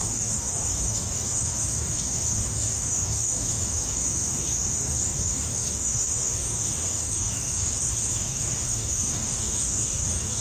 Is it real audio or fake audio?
fake